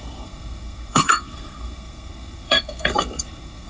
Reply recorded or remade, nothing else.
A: remade